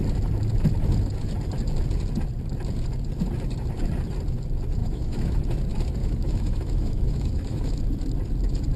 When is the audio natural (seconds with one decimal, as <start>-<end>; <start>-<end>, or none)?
0.0-4.8; 5.4-6.0; 7.8-8.8